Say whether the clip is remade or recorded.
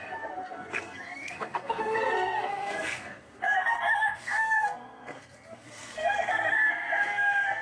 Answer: remade